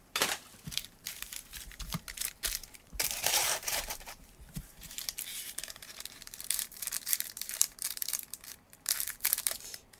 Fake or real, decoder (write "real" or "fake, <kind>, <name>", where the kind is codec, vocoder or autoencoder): fake, vocoder, BigVGAN v2